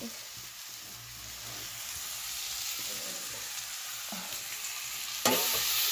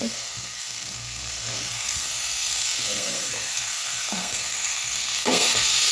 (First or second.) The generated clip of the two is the second